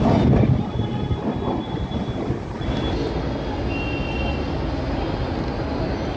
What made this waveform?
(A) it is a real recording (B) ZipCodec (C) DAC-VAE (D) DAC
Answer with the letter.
A